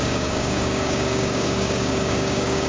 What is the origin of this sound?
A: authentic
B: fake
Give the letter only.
B